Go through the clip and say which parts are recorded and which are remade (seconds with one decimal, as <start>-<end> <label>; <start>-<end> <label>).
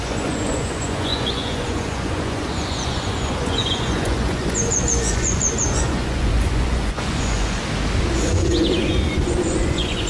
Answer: 0.0-7.6 remade; 7.6-8.1 recorded; 8.1-10.1 remade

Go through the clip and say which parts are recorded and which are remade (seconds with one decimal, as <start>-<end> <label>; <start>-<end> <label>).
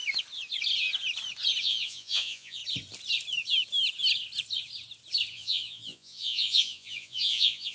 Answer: 0.0-1.6 recorded; 1.6-2.6 remade; 2.6-5.3 recorded; 5.3-7.7 remade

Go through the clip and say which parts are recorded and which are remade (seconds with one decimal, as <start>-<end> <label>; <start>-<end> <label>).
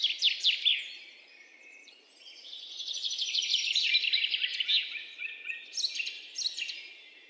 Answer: 0.0-1.5 recorded; 1.5-3.9 remade; 3.9-7.3 recorded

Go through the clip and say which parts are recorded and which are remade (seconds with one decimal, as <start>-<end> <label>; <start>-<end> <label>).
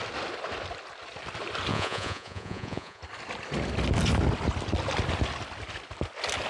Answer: 0.0-1.7 recorded; 1.7-3.0 remade; 3.0-6.5 recorded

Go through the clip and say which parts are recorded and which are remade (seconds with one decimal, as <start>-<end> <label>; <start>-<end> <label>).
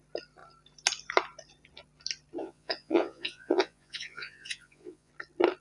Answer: 0.0-2.4 recorded; 2.4-5.1 remade; 5.1-5.6 recorded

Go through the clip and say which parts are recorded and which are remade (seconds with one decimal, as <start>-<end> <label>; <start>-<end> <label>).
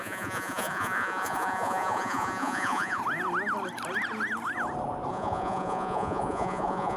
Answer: 0.0-3.0 remade; 3.0-5.1 recorded; 5.1-7.0 remade